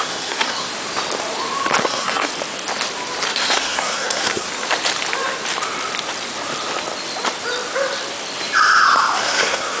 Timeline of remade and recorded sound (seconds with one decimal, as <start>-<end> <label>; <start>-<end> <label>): 0.0-0.7 remade; 0.7-1.8 recorded; 1.8-2.3 remade; 2.3-3.3 recorded; 3.3-4.5 remade; 4.5-9.2 recorded; 9.2-9.8 remade